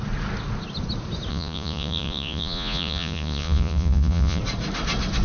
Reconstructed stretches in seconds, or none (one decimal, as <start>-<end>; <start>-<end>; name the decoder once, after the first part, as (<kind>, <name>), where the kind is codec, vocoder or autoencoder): 1.3-4.4 (vocoder, Vocos)